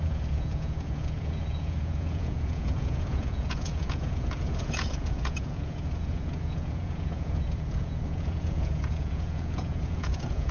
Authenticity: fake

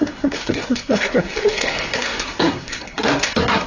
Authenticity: fake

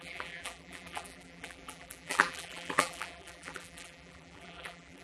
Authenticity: fake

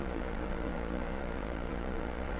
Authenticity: fake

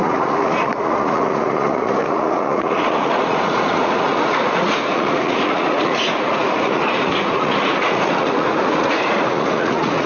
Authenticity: fake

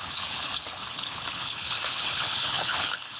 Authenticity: fake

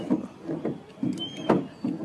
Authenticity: real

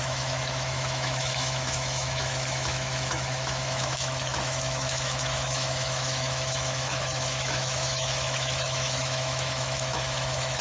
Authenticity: fake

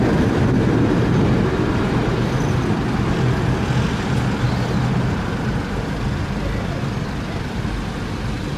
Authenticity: real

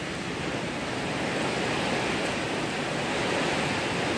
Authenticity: real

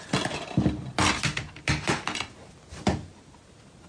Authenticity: real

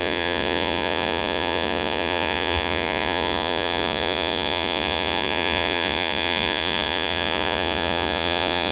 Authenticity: fake